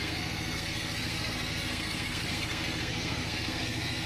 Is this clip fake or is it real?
fake